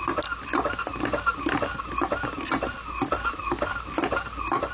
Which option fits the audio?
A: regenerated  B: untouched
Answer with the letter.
B